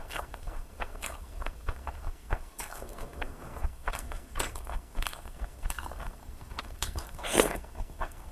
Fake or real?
fake